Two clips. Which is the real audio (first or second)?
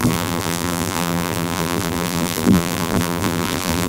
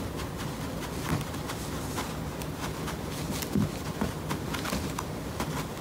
second